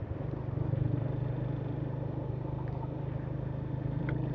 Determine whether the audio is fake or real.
fake